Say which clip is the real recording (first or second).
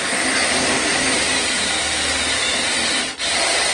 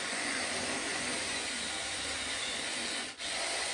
first